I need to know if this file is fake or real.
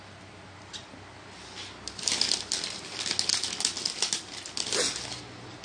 real